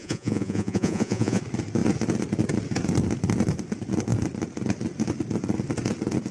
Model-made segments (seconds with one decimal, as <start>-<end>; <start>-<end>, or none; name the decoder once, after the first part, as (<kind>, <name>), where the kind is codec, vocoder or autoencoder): 0.0-1.4 (vocoder, Vocos)